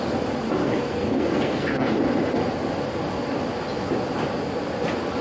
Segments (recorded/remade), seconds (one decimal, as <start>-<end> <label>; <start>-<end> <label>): 0.0-0.6 recorded; 0.6-1.9 remade; 1.9-5.2 recorded